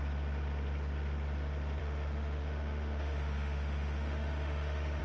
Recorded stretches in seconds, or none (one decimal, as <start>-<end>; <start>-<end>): 0.0-1.8